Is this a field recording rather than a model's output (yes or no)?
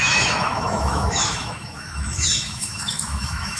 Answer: no